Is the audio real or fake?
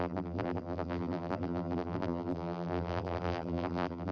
fake